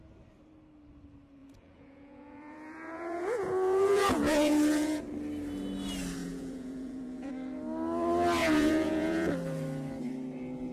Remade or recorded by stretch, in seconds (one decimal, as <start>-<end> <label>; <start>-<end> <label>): 0.0-1.4 recorded; 1.4-5.0 remade; 5.0-6.2 recorded; 6.2-7.3 remade; 7.3-8.4 recorded; 8.4-9.3 remade; 9.3-10.7 recorded